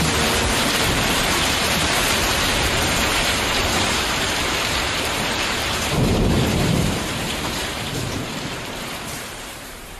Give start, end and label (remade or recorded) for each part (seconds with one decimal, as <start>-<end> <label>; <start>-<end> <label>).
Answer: 0.0-10.0 remade